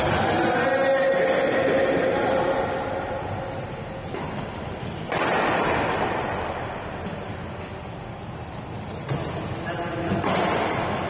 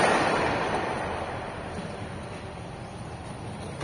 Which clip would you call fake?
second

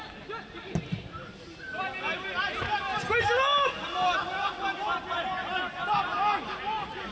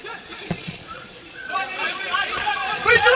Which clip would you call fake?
second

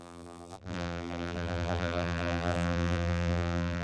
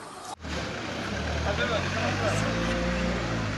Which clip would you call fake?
first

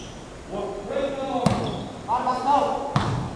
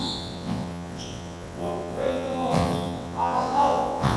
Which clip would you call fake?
second